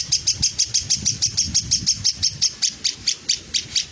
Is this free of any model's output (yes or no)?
yes